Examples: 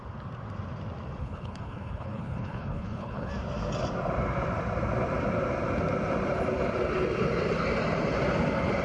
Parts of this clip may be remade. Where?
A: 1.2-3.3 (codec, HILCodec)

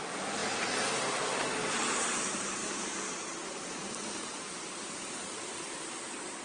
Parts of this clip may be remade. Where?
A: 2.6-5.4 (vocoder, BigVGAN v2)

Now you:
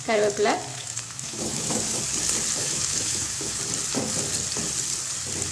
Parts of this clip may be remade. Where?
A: 0.7-2.0 (autoencoder, DAC-VAE); 2.6-3.6

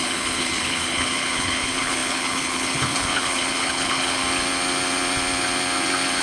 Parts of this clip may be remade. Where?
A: 0.0-4.2 (codec, HILCodec)

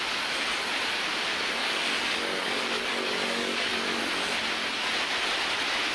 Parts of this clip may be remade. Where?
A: 1.6-4.0 (codec, DAC)

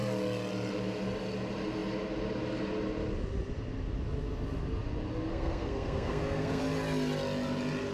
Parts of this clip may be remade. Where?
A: 5.3-6.6 (codec, SNAC)

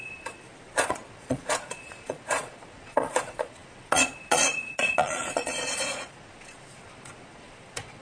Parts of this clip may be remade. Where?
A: 0.0-8.0 (vocoder, Vocos)

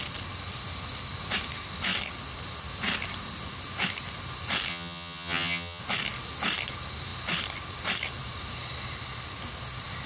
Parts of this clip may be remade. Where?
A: 4.7-5.8 (vocoder, HiFi-GAN)